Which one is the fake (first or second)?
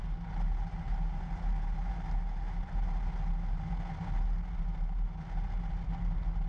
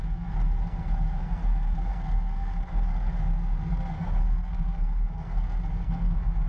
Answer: second